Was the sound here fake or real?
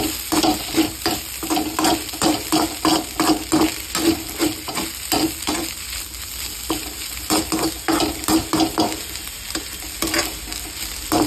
real